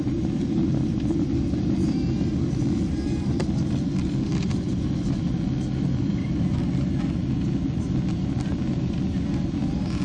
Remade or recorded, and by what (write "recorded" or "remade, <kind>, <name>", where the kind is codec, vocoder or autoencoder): recorded